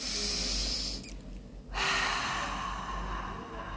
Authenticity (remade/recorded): recorded